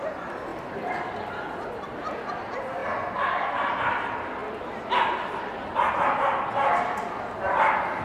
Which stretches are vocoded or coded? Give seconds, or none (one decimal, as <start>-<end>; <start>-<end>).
4.4-5.4